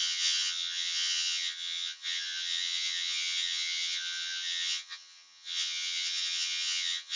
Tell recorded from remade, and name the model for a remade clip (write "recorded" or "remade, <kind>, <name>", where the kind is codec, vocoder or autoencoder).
remade, vocoder, HiFi-GAN